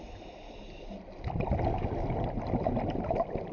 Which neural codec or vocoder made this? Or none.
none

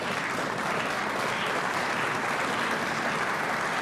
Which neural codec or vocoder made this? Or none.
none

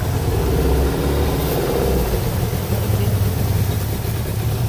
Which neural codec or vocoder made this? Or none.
none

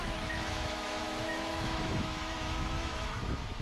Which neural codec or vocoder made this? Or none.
autoencoder, DAC-VAE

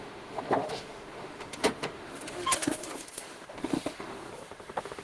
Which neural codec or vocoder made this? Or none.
autoencoder, DAC-VAE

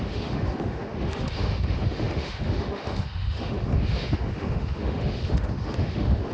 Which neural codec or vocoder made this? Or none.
autoencoder, DAC-VAE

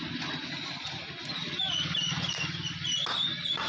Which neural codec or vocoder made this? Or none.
none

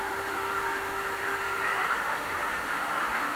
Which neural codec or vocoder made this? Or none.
autoencoder, DAC-VAE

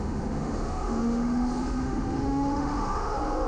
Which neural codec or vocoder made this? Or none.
autoencoder, DAC-VAE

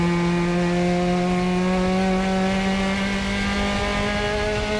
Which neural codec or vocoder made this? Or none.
none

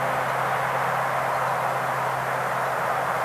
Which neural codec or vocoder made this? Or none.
none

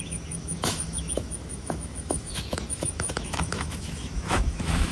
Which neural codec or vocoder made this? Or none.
autoencoder, DAC-VAE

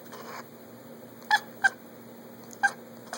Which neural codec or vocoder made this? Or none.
none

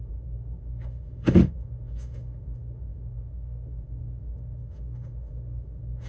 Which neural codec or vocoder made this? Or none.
autoencoder, DAC-VAE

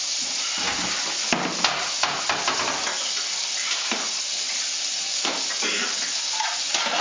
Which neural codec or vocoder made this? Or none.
none